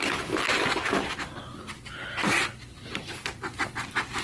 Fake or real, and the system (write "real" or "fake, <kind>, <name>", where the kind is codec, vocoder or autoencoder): real